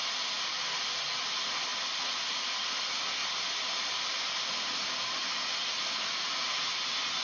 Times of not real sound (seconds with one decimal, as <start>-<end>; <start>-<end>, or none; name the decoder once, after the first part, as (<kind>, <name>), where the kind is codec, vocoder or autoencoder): none